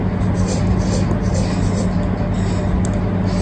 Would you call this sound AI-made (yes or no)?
no